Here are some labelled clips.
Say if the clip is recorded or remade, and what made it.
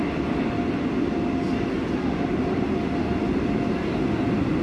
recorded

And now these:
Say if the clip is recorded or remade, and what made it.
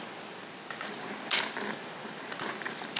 recorded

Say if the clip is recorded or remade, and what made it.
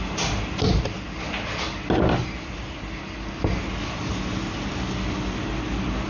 recorded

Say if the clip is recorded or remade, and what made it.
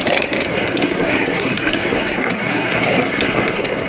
remade, codec, SNAC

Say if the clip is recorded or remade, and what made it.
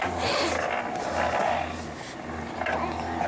recorded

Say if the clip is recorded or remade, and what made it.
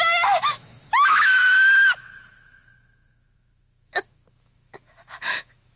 remade, autoencoder, DAC-VAE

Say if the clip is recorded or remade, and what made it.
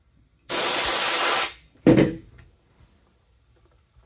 recorded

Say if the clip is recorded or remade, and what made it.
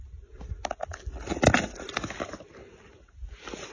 recorded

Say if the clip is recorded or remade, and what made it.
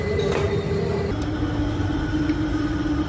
recorded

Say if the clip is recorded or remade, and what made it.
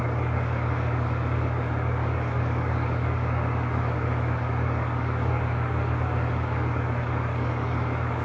remade, codec, DAC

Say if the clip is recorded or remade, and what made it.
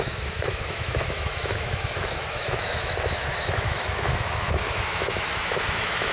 remade, autoencoder, DAC-VAE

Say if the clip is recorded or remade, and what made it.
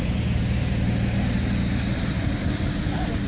recorded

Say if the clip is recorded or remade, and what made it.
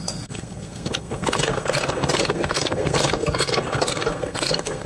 remade, codec, SNAC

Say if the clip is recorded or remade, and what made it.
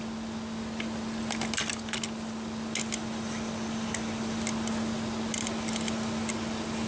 recorded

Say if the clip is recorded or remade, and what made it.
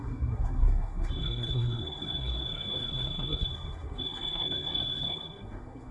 remade, codec, SNAC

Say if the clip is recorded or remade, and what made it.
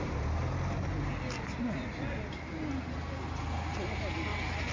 recorded